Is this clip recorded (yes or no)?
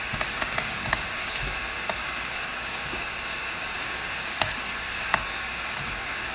no